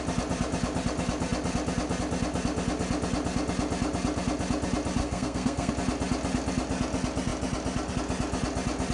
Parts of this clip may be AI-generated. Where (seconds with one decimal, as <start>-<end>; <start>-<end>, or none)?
5.0-5.7